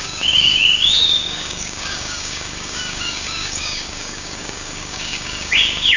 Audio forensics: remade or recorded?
remade